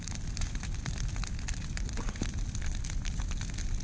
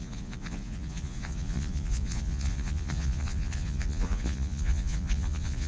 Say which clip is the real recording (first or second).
first